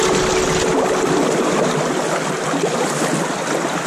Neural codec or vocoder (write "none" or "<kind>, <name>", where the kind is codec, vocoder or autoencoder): none